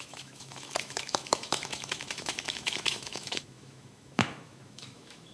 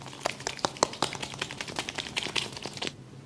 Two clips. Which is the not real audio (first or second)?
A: first